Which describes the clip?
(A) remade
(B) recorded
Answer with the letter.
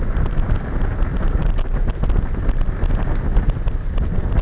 B